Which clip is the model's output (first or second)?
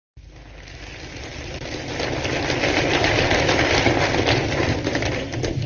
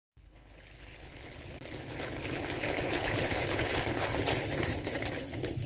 second